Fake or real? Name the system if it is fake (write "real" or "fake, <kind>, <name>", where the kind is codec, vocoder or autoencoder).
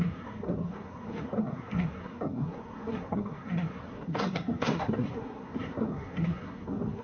fake, codec, SNAC